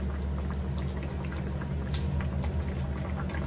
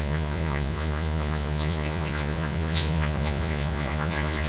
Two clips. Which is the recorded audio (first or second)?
first